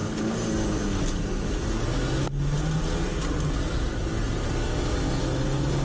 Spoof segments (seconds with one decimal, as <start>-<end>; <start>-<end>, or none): none